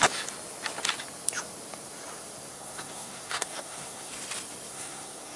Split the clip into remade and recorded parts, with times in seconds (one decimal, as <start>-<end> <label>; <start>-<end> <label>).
0.0-2.5 recorded; 2.5-4.1 remade; 4.1-4.7 recorded; 4.7-5.4 remade